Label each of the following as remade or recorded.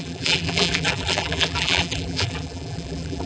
remade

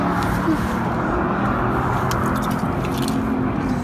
recorded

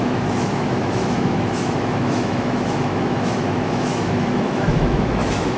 remade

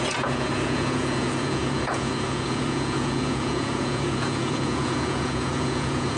remade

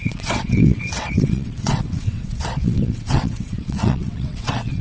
remade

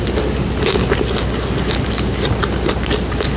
recorded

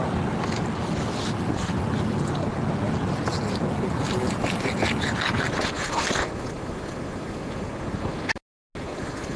recorded